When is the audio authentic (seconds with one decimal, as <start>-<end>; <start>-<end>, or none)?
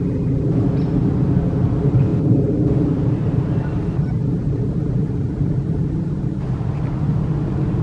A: 0.0-2.1; 6.2-7.8